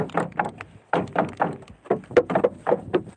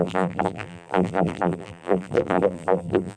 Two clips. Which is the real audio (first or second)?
first